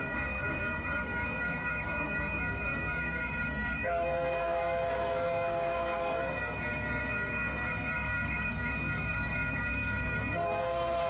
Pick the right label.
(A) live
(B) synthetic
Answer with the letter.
B